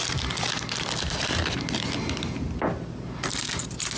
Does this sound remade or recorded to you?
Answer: recorded